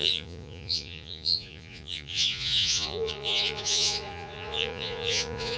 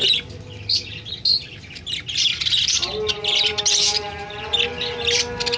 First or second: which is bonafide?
second